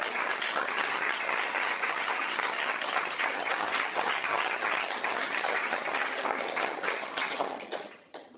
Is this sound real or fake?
fake